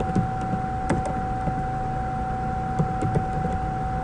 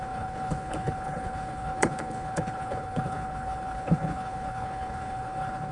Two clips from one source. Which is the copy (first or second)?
second